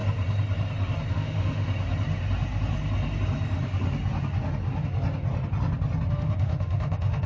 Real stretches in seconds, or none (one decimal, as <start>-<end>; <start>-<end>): 0.0-1.1; 1.7-6.1